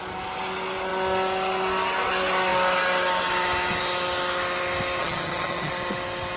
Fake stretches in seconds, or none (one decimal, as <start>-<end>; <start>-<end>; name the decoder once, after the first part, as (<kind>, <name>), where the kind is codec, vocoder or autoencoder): 5.0-5.7 (vocoder, HiFi-GAN)

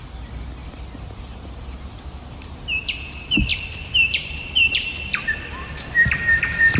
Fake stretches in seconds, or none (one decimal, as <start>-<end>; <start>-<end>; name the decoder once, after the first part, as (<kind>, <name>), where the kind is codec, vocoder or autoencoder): 3.5-5.9 (vocoder, BigVGAN v2)